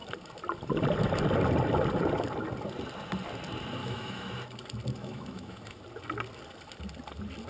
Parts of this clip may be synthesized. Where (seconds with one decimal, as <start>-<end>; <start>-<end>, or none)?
3.8-4.3; 5.0-5.8